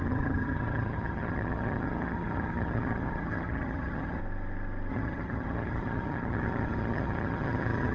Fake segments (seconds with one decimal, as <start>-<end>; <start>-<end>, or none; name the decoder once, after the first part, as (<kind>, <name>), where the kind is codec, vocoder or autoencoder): 0.0-4.2 (vocoder, HiFi-GAN); 4.9-7.9